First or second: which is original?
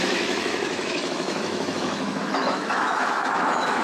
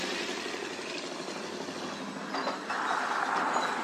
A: second